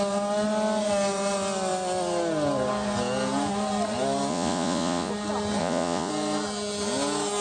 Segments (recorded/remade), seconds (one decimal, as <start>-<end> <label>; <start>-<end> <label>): 0.0-4.3 recorded; 4.3-5.1 remade; 5.1-5.6 recorded; 5.6-6.1 remade; 6.1-7.4 recorded